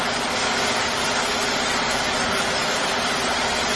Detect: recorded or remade recorded